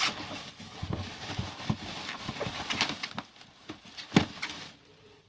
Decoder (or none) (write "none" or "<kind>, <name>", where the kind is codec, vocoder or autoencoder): none